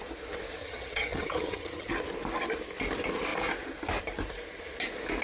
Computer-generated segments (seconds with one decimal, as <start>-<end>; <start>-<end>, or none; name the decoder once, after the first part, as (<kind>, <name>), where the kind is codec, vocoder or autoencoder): 0.6-1.9 (vocoder, HiFi-GAN)